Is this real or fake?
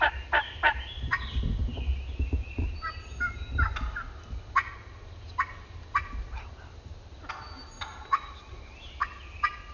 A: real